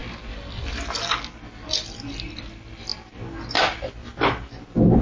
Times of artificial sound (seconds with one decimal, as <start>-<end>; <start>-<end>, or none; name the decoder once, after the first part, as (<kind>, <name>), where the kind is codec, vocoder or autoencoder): none